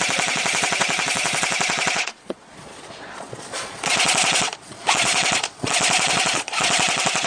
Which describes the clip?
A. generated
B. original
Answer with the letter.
A